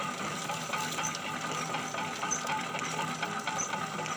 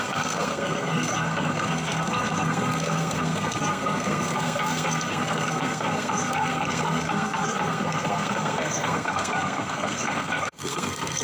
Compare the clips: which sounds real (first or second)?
first